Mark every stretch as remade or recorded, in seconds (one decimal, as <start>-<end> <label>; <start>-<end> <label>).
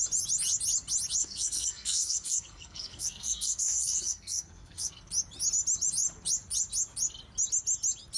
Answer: 0.0-1.2 recorded; 1.2-4.9 remade; 4.9-8.2 recorded